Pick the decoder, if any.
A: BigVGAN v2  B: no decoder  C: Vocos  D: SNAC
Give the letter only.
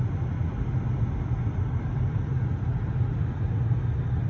B